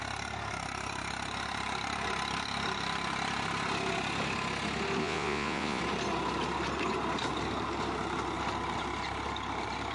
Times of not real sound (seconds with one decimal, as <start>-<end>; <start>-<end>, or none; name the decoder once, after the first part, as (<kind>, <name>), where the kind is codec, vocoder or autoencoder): 5.0-5.8 (vocoder, Vocos)